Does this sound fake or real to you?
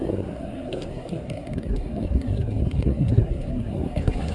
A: fake